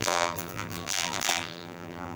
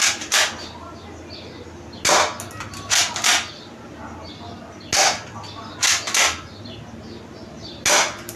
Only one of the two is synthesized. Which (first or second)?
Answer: first